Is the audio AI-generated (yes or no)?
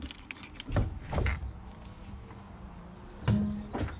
no